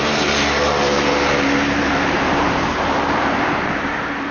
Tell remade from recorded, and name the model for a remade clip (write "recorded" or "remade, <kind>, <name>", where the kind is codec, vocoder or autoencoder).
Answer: remade, vocoder, BigVGAN v2